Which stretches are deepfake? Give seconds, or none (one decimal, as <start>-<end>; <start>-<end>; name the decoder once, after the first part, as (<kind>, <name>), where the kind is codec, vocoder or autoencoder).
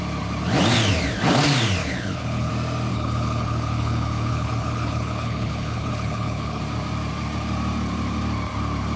1.8-2.5 (codec, HILCodec); 2.9-6.6